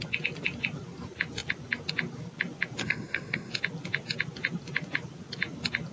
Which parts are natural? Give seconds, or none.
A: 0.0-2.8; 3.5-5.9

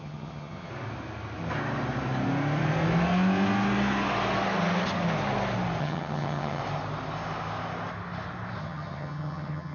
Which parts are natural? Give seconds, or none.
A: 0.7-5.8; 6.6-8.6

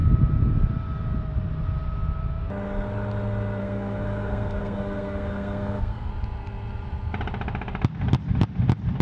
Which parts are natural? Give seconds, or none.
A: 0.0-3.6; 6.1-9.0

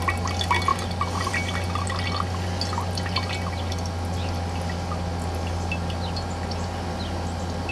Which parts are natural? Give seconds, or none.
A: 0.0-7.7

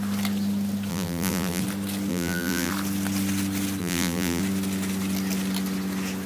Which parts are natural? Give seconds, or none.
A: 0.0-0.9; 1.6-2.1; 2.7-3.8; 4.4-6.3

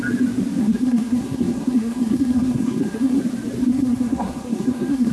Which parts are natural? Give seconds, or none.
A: 0.0-0.6; 3.2-3.7